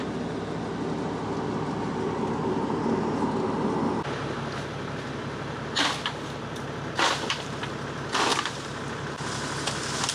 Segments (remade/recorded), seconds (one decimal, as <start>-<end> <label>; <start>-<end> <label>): 0.0-8.3 recorded; 8.3-8.8 remade; 8.8-10.1 recorded